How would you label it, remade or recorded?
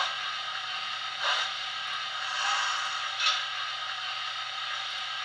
recorded